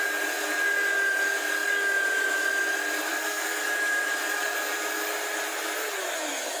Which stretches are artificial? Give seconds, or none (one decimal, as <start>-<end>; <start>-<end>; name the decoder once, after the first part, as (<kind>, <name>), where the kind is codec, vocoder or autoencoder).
3.1-3.6 (codec, SNAC)